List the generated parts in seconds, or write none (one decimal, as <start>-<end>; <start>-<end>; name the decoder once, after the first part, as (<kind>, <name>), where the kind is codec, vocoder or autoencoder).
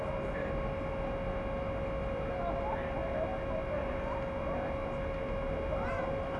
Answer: none